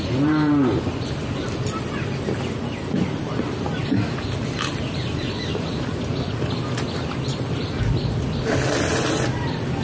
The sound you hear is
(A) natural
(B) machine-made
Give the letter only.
A